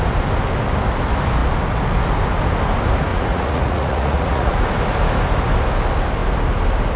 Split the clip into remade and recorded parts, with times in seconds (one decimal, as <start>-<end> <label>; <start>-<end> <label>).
0.0-3.1 recorded; 3.1-4.6 remade; 4.6-7.0 recorded